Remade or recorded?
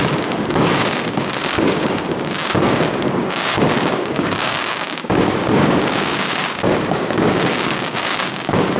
remade